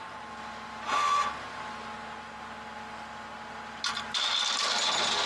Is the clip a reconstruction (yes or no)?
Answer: no